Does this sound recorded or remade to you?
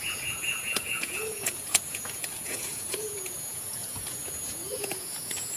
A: remade